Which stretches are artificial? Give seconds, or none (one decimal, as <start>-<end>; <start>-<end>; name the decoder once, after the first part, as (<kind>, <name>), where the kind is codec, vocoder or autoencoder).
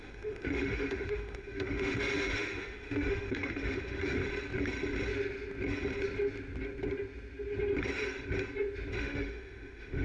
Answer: 0.0-4.2 (autoencoder, DAC-VAE); 9.0-10.0